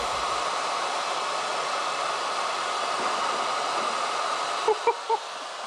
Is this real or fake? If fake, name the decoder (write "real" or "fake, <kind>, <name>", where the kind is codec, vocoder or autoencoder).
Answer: real